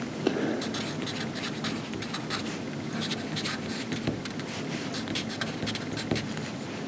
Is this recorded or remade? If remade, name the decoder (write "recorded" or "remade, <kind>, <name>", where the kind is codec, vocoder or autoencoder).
recorded